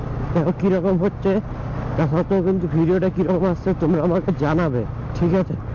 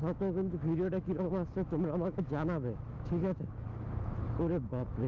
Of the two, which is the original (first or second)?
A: first